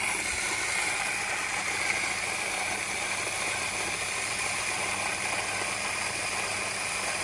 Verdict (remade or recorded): recorded